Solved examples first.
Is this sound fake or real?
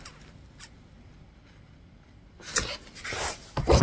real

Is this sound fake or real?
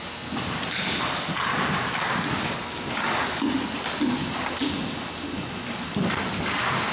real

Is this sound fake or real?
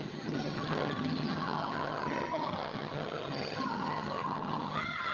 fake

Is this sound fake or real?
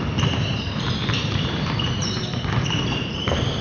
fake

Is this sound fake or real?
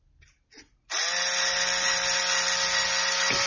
real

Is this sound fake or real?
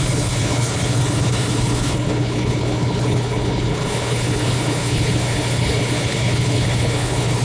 fake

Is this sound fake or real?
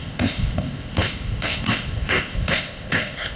fake